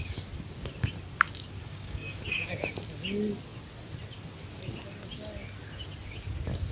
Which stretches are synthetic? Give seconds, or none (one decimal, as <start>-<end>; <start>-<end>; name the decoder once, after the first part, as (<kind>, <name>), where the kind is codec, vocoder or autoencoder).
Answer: 1.6-2.2 (codec, DAC)